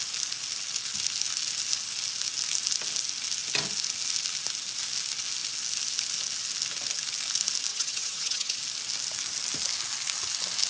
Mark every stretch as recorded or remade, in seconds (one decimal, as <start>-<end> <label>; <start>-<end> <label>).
0.0-7.7 recorded; 7.7-8.6 remade; 8.6-10.7 recorded